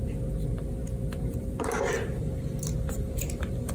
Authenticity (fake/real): real